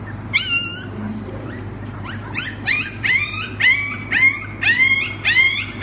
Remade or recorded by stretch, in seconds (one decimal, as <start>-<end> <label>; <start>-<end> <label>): 0.0-0.7 recorded; 0.7-3.5 remade; 3.5-5.8 recorded